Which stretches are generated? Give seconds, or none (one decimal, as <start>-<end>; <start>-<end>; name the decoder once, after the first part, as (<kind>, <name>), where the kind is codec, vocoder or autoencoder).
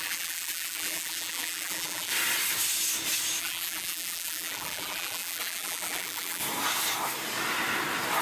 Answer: 0.0-2.1 (vocoder, BigVGAN v2); 3.4-6.4